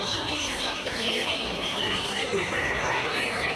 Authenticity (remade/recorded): remade